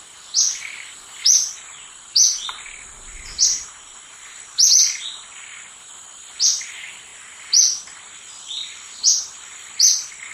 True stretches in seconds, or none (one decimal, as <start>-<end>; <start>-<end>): 0.0-10.3